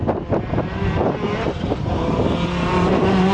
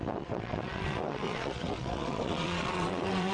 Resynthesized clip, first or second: second